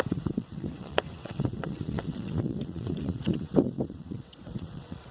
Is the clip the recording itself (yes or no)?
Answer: no